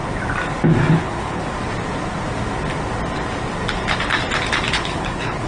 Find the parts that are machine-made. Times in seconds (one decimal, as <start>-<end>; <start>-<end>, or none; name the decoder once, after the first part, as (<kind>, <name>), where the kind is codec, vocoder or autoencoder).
0.9-1.4 (codec, HILCodec); 4.7-5.5